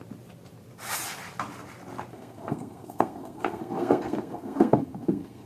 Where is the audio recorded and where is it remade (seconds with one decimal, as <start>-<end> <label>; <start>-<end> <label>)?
0.0-2.1 recorded; 2.1-5.5 remade